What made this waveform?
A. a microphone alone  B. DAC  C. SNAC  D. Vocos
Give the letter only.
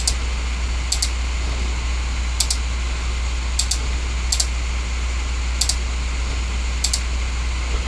A